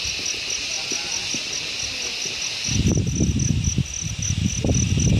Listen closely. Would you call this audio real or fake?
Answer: real